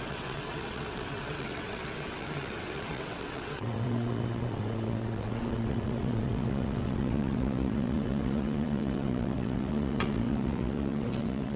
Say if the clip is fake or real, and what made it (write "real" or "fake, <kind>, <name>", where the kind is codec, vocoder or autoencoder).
fake, vocoder, WaveNeXt